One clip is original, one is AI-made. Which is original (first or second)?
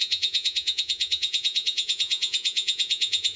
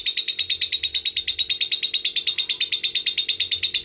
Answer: second